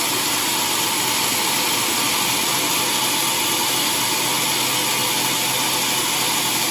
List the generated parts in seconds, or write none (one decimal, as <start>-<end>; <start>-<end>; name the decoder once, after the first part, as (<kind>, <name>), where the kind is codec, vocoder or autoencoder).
0.5-3.4 (vocoder, BigVGAN v2)

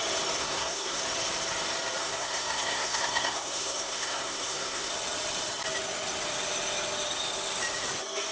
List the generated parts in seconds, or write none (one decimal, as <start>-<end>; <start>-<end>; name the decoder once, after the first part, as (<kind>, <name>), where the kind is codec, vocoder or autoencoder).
0.4-1.0 (codec, SNAC); 2.0-4.9

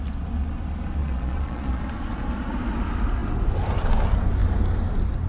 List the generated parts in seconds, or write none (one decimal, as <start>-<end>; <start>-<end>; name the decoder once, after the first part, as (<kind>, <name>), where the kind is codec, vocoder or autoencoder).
1.0-1.8 (vocoder, Vocos)